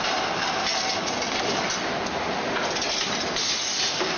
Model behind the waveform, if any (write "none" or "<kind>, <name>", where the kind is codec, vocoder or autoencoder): none